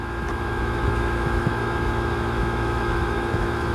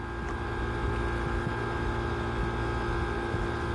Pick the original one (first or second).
second